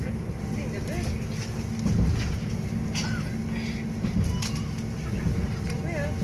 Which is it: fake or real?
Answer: real